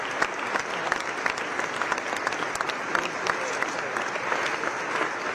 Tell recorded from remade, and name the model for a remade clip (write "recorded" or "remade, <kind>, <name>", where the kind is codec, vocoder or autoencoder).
recorded